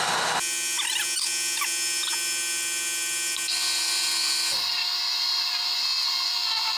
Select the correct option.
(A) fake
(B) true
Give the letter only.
B